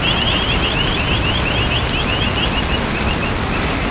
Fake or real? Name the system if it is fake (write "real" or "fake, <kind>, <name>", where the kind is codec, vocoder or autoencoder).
real